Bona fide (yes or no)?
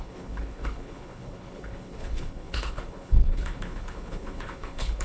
no